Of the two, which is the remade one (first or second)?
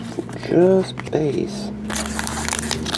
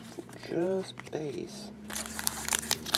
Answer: second